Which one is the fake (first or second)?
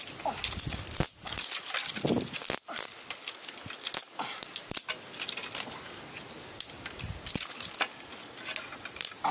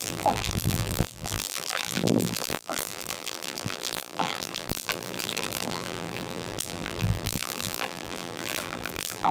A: second